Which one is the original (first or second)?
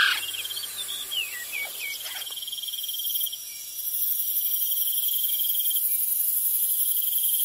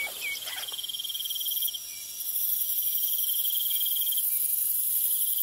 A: second